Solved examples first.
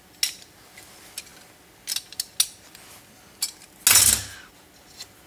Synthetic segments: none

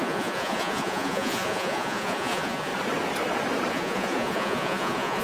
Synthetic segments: 0.0-2.7 (vocoder, Vocos); 3.7-5.2

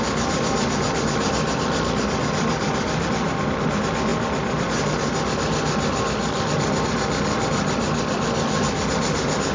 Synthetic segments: none

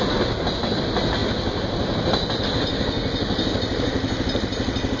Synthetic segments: none

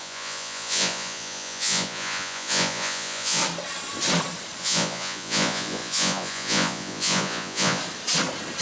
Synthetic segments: 0.0-3.4 (vocoder, Vocos); 4.6-7.8

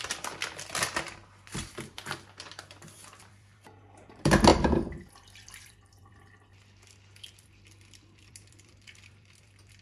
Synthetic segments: 0.0-9.8 (vocoder, BigVGAN v2)

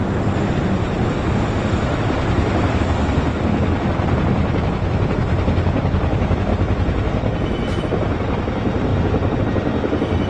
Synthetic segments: 0.0-6.5 (vocoder, BigVGAN v2); 7.8-8.9; 9.4-10.3

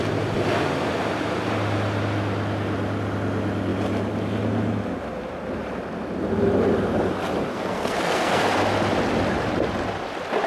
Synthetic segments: 7.5-8.6 (codec, SNAC)